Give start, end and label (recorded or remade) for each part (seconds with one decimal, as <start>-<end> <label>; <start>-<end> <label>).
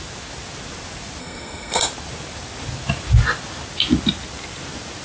0.0-1.2 recorded; 1.2-1.8 remade; 1.8-5.0 recorded